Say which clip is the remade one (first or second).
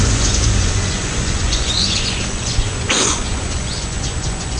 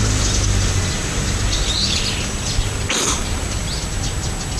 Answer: first